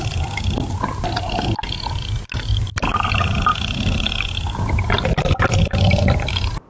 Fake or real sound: real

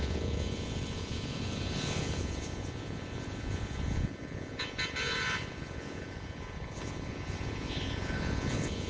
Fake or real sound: fake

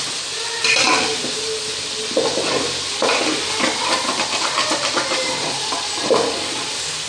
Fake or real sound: real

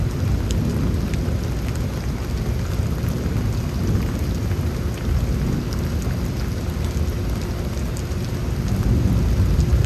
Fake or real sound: real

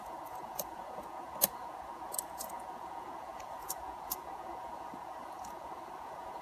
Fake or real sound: fake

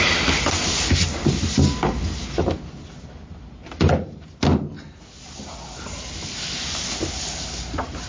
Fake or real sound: real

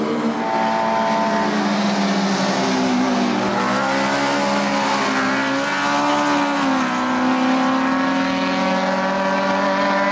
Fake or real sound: real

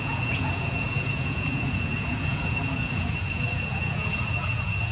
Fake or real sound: fake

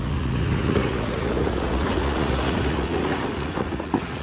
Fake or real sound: fake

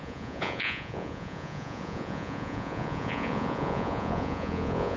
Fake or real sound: fake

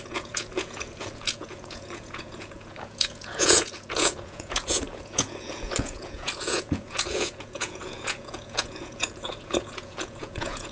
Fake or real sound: fake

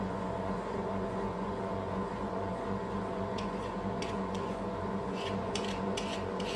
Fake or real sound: fake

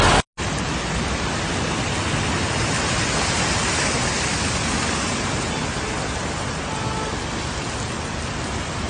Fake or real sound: real